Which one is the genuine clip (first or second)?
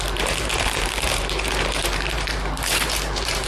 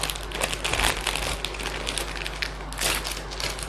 second